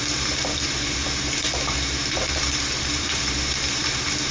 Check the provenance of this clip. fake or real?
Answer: fake